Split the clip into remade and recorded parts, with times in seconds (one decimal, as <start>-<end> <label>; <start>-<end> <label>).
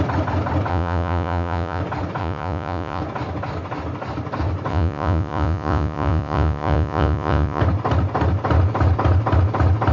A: 0.0-0.7 recorded; 0.7-1.8 remade; 1.8-2.2 recorded; 2.2-3.0 remade; 3.0-4.7 recorded; 4.7-7.6 remade; 7.6-9.9 recorded